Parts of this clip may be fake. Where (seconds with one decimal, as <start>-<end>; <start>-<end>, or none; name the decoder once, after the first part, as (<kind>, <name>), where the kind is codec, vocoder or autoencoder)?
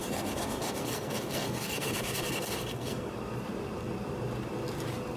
0.0-3.1 (codec, SNAC)